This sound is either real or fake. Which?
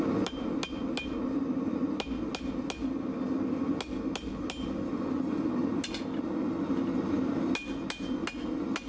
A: real